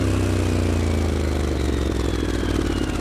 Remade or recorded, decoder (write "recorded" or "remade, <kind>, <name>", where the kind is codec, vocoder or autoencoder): recorded